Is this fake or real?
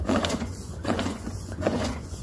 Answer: fake